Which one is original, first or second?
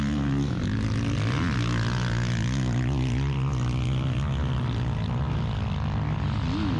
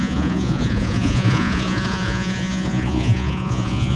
first